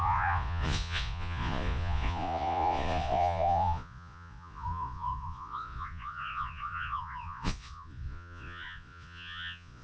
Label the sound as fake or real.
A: fake